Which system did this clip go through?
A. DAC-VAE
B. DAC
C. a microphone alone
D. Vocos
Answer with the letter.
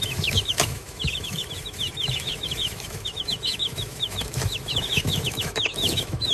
A